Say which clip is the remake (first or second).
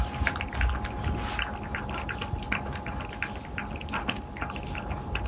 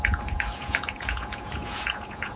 second